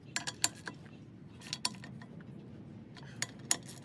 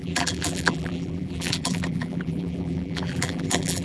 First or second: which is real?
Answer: first